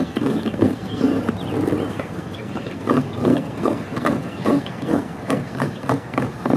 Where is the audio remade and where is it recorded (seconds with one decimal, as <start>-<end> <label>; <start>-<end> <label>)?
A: 0.0-1.1 remade; 1.1-1.9 recorded; 1.9-6.6 remade